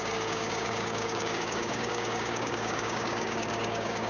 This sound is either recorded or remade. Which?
remade